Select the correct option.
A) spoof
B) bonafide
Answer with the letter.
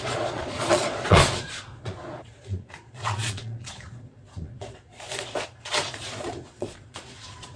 A